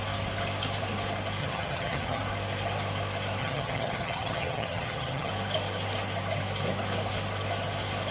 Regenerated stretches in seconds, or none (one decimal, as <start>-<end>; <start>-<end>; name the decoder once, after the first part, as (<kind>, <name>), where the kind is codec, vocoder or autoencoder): 1.4-2.2 (vocoder, HiFi-GAN); 3.4-5.3